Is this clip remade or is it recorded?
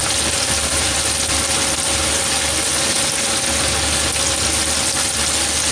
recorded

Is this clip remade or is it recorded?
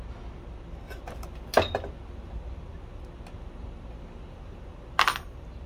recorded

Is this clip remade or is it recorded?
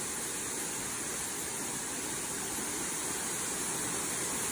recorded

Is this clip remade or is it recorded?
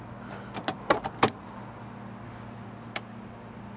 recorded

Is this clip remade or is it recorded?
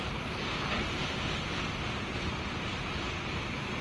recorded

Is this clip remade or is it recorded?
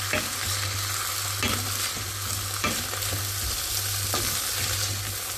recorded